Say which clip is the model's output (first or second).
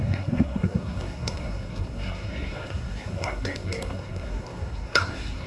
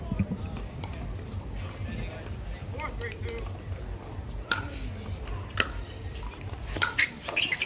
first